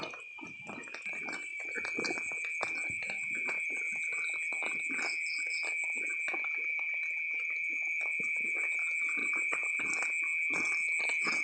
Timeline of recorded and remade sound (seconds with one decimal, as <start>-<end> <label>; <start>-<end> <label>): 0.0-9.2 recorded; 9.2-9.8 remade; 9.8-11.4 recorded